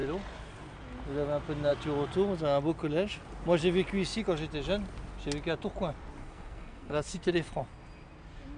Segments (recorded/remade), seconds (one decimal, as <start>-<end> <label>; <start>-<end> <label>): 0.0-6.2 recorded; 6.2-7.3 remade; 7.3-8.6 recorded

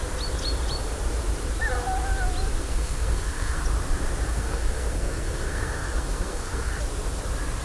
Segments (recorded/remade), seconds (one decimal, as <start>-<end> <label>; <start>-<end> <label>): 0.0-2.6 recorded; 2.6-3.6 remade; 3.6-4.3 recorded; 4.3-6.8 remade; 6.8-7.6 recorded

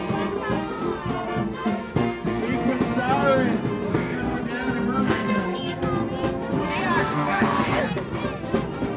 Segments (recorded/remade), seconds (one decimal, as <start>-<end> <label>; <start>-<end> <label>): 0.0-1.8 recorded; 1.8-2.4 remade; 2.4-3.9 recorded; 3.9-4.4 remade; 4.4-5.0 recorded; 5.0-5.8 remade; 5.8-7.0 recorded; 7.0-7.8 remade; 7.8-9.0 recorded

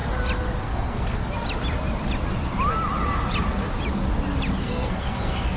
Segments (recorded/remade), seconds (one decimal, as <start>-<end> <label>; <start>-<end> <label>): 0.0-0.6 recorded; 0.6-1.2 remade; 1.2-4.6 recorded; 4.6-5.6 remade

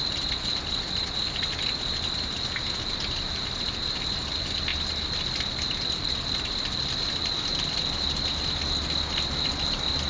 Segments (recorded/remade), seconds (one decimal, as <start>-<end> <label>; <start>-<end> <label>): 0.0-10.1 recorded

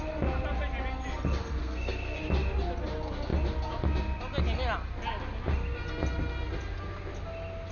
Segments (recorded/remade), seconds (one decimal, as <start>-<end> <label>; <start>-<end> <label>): 0.0-1.6 recorded; 1.6-2.2 remade; 2.2-7.7 recorded

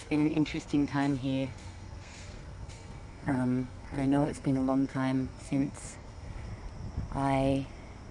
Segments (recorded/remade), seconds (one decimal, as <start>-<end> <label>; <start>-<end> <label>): 0.0-6.5 remade; 6.5-8.1 recorded